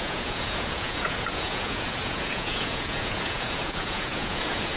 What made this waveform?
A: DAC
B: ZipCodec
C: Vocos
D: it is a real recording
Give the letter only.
C